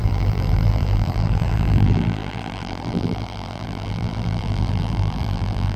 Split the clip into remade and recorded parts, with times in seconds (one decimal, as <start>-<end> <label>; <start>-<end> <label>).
0.0-5.8 remade

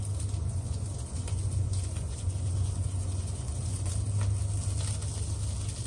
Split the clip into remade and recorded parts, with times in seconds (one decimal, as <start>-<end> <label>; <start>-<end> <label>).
0.0-0.4 recorded; 0.4-3.9 remade; 3.9-5.9 recorded

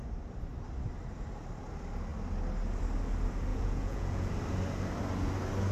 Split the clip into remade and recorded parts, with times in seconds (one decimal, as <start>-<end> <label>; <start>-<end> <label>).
0.0-3.5 recorded; 3.5-4.3 remade; 4.3-5.7 recorded

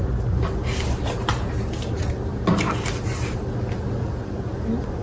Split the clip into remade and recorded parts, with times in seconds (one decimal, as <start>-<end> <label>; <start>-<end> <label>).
0.0-5.0 recorded

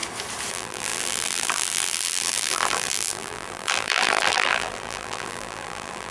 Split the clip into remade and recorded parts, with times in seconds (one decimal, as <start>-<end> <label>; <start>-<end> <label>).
0.0-0.5 recorded; 0.5-6.1 remade

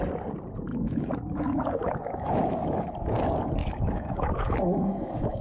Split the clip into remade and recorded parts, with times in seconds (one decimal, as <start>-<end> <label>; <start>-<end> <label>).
0.0-0.7 recorded; 0.7-2.9 remade; 2.9-3.6 recorded; 3.6-5.4 remade